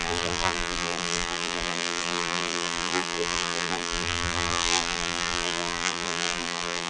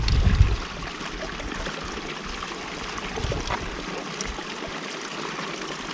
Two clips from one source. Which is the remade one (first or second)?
first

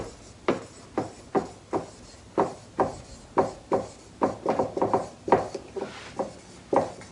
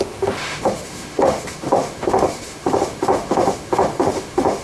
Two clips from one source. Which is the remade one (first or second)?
second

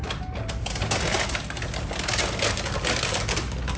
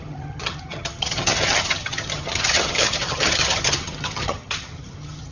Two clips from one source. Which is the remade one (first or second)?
second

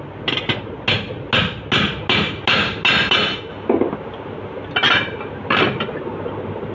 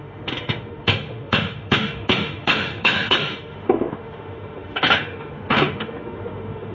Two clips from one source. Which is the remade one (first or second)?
second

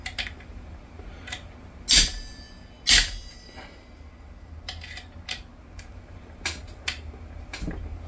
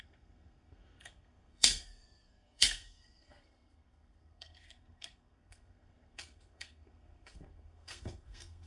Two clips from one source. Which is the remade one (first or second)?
second